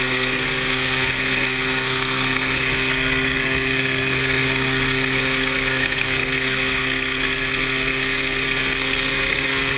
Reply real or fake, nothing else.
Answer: fake